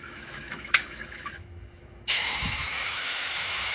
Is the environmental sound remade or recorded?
remade